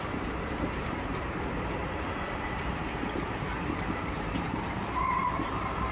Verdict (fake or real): fake